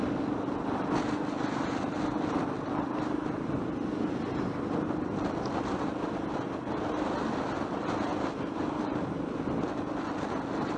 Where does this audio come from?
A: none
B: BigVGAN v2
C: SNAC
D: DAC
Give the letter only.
A